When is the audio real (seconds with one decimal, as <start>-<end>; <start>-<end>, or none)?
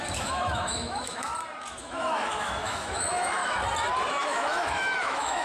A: 1.3-1.8; 3.4-4.2